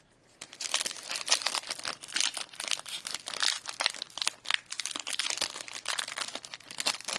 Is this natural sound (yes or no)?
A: yes